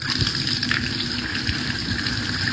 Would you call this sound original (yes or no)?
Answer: no